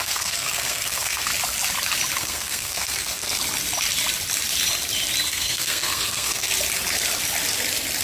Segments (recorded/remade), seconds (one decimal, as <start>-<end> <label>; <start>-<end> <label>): 0.0-1.3 remade; 1.3-2.2 recorded; 2.2-3.4 remade; 3.4-5.3 recorded; 5.3-6.5 remade; 6.5-8.0 recorded